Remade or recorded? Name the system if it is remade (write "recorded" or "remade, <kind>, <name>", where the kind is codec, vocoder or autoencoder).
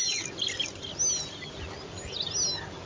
recorded